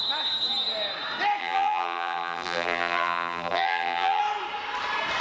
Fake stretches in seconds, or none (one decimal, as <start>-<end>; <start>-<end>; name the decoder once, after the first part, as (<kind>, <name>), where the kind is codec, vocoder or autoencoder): 1.4-4.2 (vocoder, BigVGAN v2)